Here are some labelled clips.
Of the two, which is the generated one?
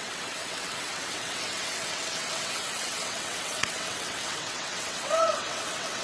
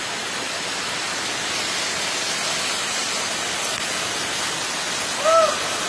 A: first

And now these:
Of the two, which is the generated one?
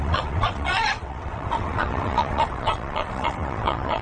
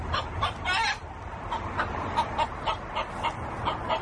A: first